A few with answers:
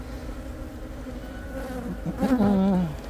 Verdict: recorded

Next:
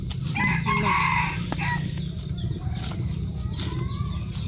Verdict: recorded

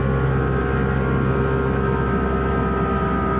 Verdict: recorded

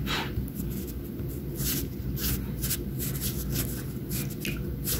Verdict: recorded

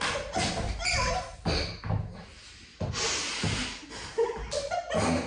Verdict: recorded